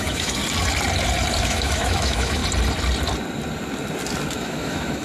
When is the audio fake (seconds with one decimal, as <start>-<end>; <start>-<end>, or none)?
0.0-0.4; 1.4-2.4; 4.3-5.0